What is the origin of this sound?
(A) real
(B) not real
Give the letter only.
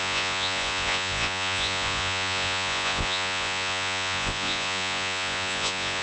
B